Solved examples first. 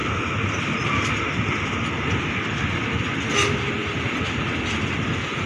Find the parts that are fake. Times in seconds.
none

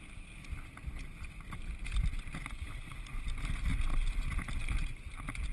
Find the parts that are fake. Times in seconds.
none

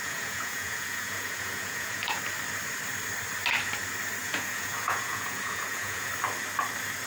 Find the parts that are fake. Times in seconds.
0.0-2.2 (vocoder, Vocos); 4.2-6.1

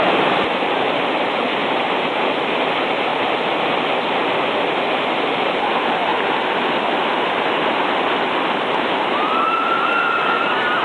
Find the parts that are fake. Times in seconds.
0.0-3.1 (vocoder, BigVGAN v2); 5.3-6.1; 8.7-10.8

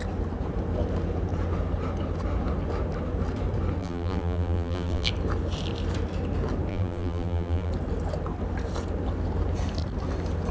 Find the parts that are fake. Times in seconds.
3.8-5.1 (vocoder, BigVGAN v2); 6.7-7.7